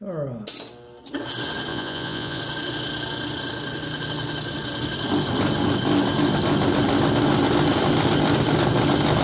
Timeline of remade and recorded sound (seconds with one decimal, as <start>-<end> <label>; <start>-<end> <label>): 0.0-1.7 recorded; 1.7-2.4 remade; 2.4-9.2 recorded